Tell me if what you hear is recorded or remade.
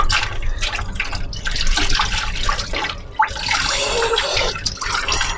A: recorded